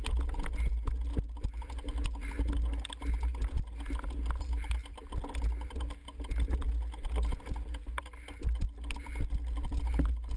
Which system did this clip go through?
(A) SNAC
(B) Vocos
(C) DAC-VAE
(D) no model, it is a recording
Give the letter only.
D